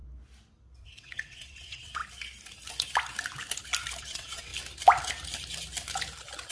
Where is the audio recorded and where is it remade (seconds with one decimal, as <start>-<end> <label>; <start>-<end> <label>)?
0.0-0.8 recorded; 0.8-2.0 remade; 2.0-4.0 recorded; 4.0-4.5 remade; 4.5-6.5 recorded